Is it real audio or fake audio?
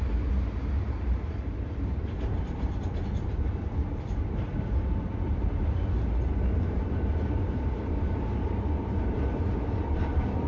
fake